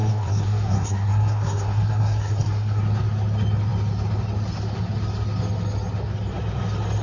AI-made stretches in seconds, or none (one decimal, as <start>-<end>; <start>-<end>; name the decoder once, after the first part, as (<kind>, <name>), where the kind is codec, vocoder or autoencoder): 0.0-2.8 (codec, SNAC)